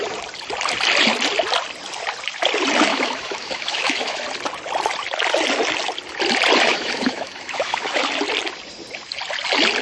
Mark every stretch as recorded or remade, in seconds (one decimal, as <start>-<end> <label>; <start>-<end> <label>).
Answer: 0.0-2.9 recorded; 2.9-4.2 remade; 4.2-6.7 recorded; 6.7-8.0 remade; 8.0-9.8 recorded